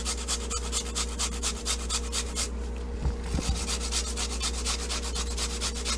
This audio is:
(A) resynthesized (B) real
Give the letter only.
B